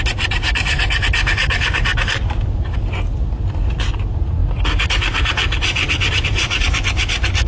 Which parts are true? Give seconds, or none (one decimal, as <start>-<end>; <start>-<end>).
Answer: 0.0-7.5